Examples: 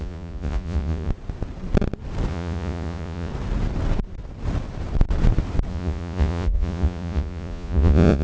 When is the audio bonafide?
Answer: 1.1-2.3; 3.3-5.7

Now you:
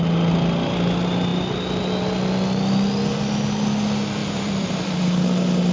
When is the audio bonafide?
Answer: 0.0-4.2; 5.0-5.7

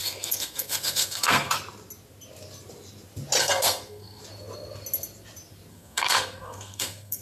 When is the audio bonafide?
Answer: 1.6-3.4; 4.2-5.7

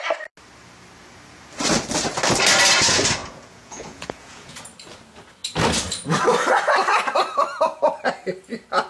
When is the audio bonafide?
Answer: 0.0-3.2; 4.6-8.9

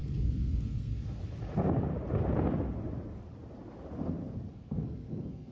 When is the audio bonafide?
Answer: 1.2-4.5

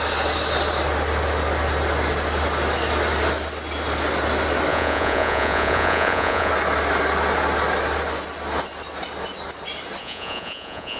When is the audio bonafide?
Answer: 0.0-4.7; 6.5-10.0

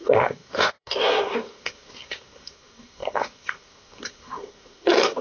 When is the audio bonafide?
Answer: none

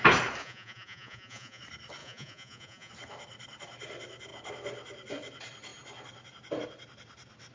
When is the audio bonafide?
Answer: 0.0-0.4; 1.6-2.0; 2.9-7.5